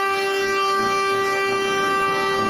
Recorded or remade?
recorded